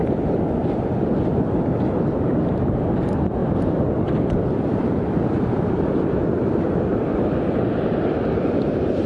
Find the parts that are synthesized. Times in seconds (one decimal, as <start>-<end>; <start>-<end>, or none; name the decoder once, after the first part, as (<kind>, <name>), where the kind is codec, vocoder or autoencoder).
0.0-3.4 (vocoder, BigVGAN v2); 3.9-9.1